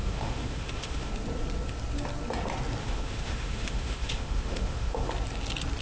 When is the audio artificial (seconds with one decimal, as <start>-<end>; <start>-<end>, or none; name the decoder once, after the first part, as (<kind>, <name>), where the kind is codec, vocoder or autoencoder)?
0.0-1.1 (autoencoder, DAC-VAE); 2.8-5.1